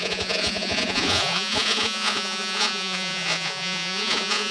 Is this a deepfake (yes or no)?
yes